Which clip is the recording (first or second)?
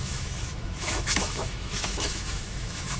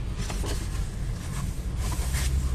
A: second